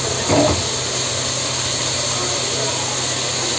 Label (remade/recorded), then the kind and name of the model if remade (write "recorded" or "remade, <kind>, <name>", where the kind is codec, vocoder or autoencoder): recorded